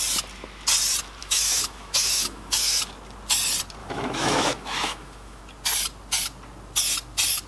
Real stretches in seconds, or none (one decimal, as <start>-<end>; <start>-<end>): 0.0-1.2; 2.8-3.8; 5.4-7.5